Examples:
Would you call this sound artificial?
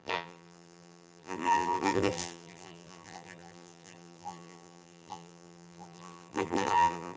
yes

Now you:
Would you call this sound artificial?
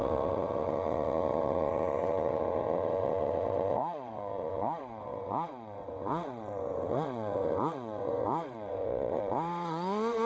yes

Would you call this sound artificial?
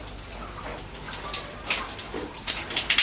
no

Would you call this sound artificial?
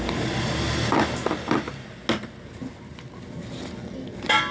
no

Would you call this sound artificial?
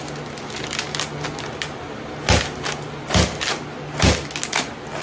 no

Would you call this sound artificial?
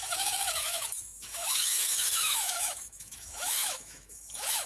yes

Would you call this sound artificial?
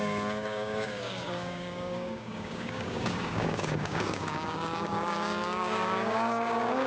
yes